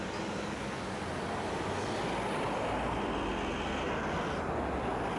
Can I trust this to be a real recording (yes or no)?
yes